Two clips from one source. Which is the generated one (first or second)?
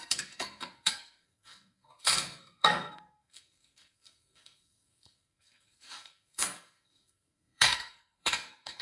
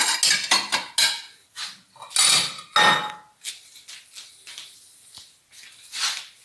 first